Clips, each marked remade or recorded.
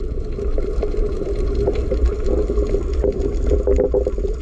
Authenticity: recorded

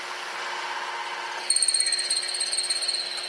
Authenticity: recorded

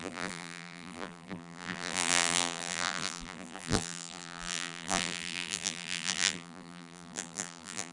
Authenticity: remade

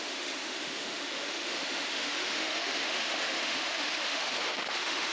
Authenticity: remade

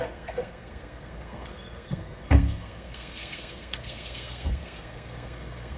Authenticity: remade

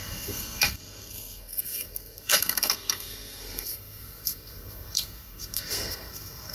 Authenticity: remade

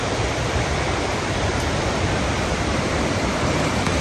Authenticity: remade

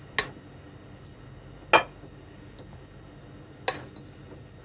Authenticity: recorded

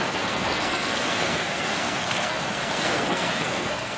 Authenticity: remade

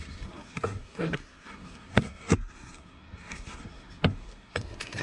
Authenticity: remade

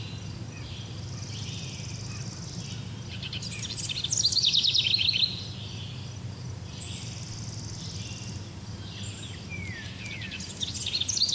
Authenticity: recorded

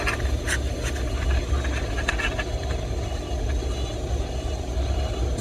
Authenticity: recorded